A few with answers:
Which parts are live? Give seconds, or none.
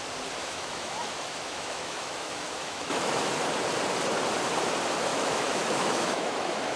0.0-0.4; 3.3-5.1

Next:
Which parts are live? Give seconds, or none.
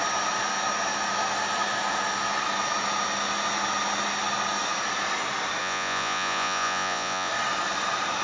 0.0-5.6; 7.3-8.2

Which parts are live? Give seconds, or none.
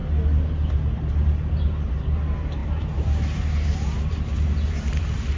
0.0-5.4